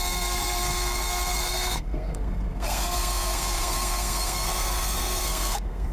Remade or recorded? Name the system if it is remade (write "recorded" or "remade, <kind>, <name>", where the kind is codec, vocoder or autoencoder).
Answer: remade, codec, SNAC